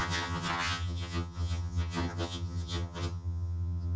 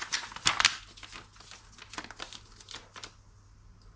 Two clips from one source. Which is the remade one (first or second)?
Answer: first